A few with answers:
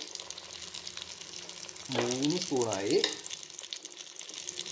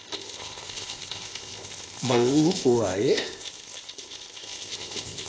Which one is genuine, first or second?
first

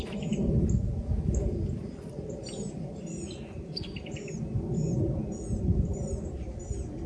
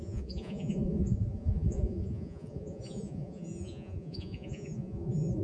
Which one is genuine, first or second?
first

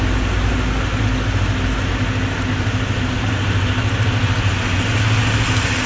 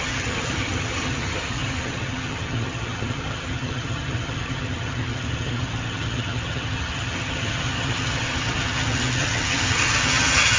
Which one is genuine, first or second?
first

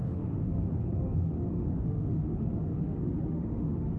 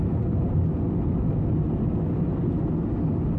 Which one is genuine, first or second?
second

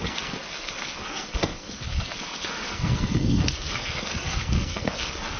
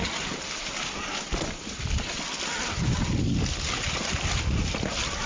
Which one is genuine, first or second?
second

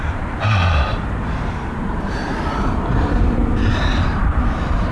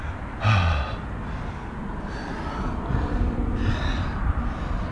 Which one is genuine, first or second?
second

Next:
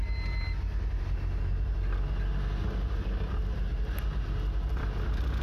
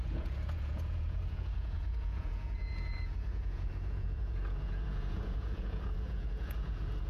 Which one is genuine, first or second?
first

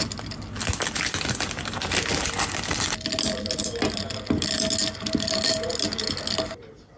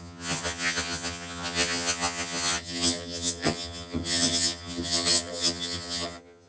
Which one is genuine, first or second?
first